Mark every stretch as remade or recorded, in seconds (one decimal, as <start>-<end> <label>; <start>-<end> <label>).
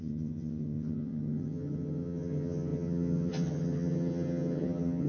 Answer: 0.0-5.1 remade